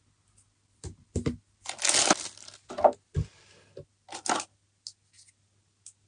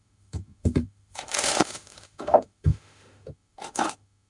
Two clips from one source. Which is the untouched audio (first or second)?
first